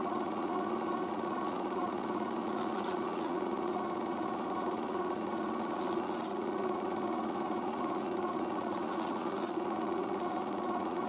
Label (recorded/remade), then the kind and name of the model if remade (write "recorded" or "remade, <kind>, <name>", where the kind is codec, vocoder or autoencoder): remade, vocoder, Vocos